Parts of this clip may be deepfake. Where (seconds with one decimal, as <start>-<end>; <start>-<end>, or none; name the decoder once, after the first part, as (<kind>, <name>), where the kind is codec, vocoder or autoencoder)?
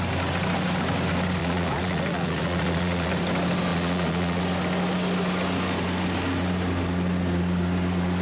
1.4-3.1 (vocoder, Vocos); 3.7-4.4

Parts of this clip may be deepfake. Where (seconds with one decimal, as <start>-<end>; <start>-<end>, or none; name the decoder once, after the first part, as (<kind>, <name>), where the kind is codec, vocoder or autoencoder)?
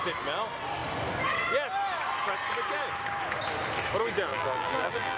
4.3-5.2 (vocoder, BigVGAN v2)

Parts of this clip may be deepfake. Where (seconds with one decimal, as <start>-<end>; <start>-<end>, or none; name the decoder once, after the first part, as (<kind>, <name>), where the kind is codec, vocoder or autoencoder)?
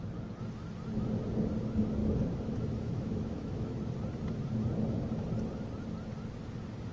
2.0-3.8 (autoencoder, DAC-VAE)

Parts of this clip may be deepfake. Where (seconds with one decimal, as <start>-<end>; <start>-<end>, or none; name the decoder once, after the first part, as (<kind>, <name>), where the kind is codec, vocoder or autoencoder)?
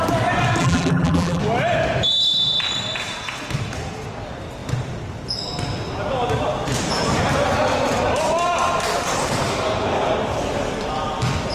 0.6-1.4 (vocoder, BigVGAN v2)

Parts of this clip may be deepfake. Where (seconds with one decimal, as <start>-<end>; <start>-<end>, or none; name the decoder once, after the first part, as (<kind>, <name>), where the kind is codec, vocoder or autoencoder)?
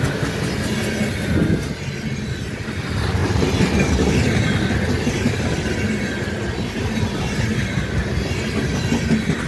none